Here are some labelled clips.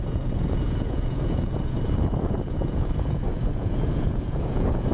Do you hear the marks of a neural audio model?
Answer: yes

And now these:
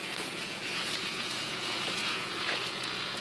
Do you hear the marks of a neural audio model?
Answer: yes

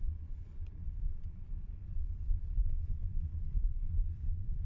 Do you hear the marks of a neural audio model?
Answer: yes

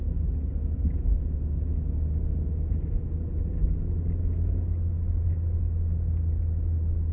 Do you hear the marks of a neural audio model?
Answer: no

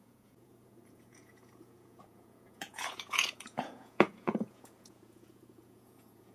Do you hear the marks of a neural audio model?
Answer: yes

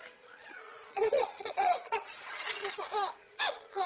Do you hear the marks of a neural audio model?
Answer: yes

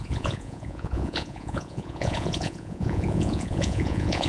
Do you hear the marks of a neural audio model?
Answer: yes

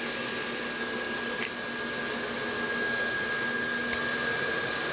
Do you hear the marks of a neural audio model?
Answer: no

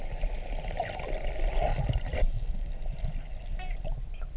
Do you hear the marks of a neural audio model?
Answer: no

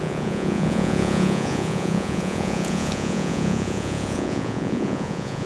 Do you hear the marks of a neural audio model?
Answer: yes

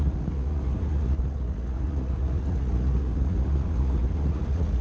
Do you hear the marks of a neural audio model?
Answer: yes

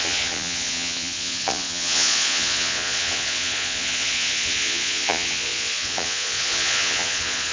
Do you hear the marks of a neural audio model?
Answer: yes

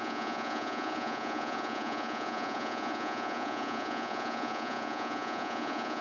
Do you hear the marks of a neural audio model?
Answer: yes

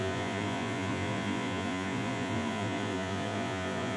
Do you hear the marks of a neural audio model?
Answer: yes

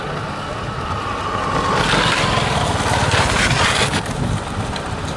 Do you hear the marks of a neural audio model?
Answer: no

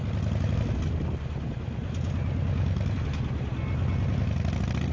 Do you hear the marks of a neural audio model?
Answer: no